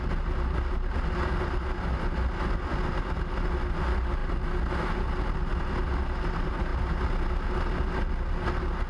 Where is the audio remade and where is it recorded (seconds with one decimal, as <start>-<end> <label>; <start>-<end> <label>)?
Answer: 0.0-8.9 recorded